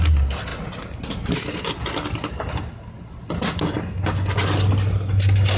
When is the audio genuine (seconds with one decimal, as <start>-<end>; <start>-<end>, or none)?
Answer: 0.0-5.6